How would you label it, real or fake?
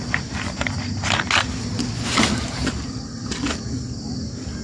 real